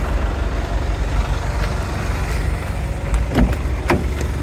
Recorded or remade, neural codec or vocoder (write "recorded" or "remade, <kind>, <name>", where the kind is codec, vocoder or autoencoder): recorded